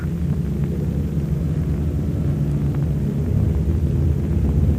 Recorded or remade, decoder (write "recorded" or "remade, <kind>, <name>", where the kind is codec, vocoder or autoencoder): recorded